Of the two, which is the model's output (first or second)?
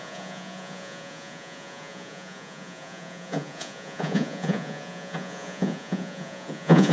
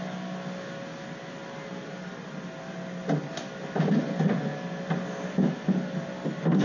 first